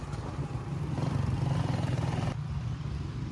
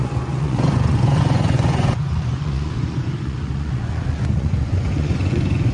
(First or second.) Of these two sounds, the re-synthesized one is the second